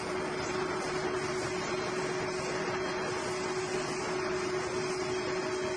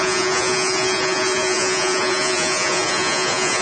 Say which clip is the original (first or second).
first